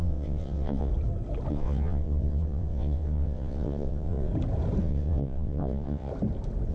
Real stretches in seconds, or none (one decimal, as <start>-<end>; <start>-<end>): 0.9-1.5; 4.3-4.8; 6.1-6.7